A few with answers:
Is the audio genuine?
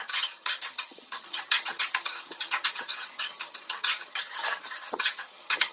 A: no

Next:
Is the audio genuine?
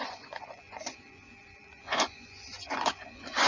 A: no